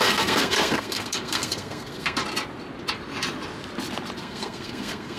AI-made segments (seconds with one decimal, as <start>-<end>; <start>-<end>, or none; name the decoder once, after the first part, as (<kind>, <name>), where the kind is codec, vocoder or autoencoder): 0.0-2.2 (codec, SNAC); 4.2-5.2